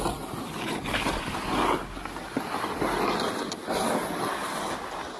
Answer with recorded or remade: recorded